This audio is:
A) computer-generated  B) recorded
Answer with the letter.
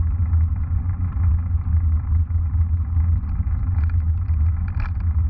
B